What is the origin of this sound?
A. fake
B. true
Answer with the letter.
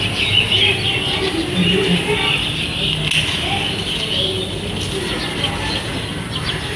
B